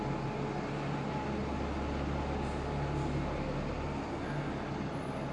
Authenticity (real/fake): real